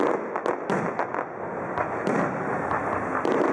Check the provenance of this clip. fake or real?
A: real